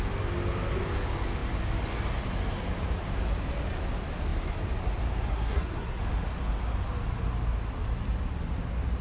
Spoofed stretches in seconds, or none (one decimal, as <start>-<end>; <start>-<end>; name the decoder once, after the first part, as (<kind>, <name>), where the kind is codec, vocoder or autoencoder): 5.3-6.0 (codec, SNAC)